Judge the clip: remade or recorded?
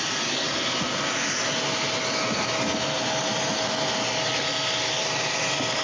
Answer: recorded